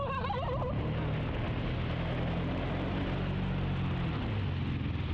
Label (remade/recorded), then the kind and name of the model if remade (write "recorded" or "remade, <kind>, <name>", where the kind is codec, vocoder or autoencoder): recorded